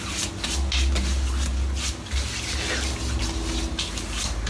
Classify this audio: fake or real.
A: real